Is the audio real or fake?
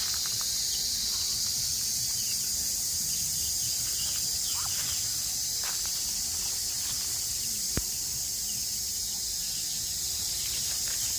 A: real